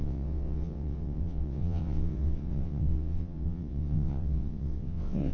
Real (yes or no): no